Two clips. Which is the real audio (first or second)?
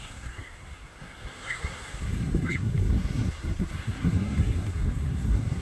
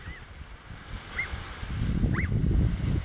second